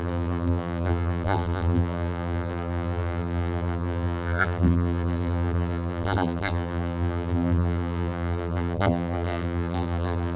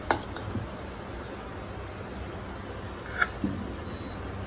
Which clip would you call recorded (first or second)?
second